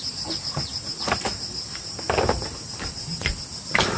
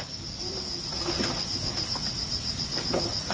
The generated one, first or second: first